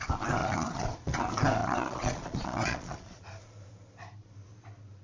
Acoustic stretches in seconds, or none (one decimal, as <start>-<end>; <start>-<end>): 0.0-0.4; 1.2-1.6; 3.3-5.0